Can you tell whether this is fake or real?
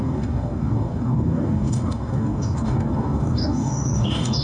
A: fake